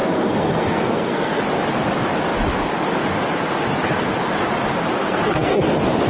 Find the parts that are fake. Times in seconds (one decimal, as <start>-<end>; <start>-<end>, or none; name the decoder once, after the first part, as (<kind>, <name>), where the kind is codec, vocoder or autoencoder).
0.0-1.4 (codec, SNAC); 5.0-5.6